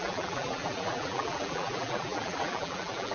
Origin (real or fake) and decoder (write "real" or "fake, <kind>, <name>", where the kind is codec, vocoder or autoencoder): fake, vocoder, BigVGAN v2